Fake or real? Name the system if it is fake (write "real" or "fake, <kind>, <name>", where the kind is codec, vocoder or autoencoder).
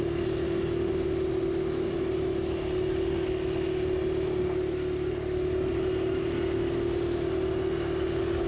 real